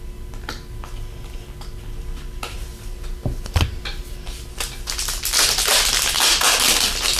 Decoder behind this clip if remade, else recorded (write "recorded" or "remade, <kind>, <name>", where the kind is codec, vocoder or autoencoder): recorded